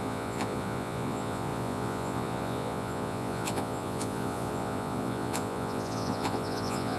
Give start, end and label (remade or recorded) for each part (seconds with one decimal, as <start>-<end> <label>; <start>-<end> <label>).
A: 0.0-7.0 remade